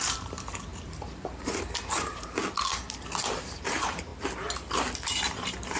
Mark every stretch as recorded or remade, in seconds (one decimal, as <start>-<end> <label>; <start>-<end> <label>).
0.0-2.4 remade; 2.4-3.2 recorded; 3.2-4.1 remade; 4.1-5.1 recorded; 5.1-5.8 remade